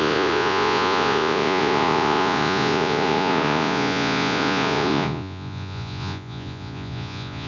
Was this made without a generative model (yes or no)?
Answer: no